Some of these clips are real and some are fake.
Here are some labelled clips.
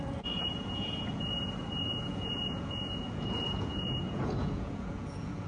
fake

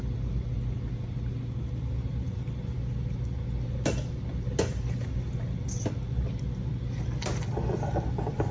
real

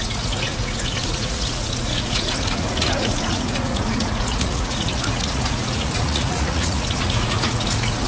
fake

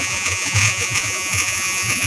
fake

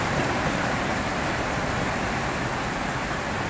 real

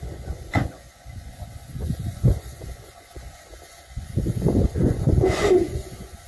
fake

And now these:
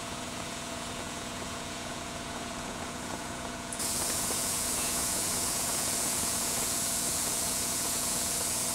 fake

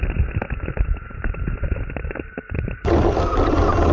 real